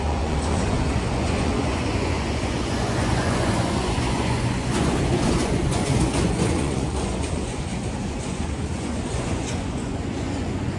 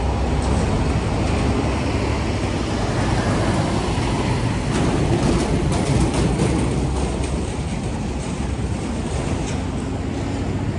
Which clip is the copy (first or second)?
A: first